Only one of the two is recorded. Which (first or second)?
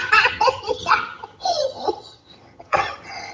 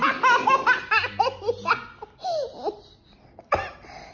second